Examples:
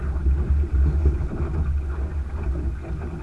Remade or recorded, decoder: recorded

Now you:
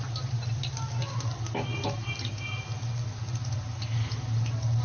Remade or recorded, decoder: recorded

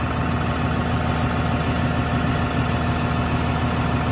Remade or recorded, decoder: recorded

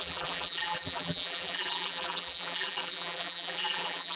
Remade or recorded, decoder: remade, vocoder, BigVGAN v2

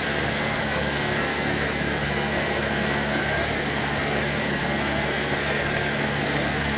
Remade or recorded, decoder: remade, codec, SNAC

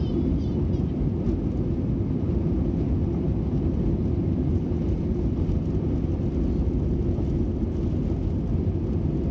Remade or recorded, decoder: recorded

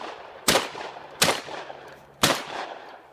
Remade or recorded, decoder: remade, vocoder, BigVGAN v2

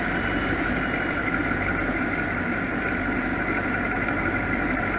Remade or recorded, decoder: remade, vocoder, BigVGAN v2